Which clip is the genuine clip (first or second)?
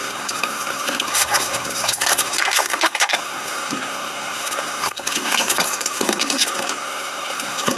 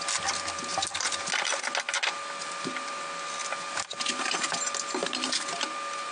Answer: second